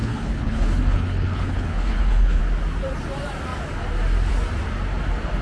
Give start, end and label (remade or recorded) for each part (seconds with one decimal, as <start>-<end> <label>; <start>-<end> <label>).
0.0-2.4 remade; 2.4-5.4 recorded